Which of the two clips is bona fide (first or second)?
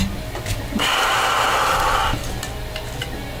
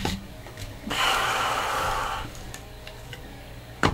first